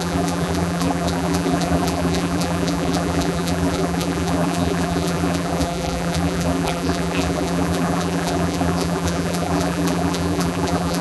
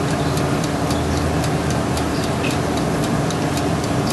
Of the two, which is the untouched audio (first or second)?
second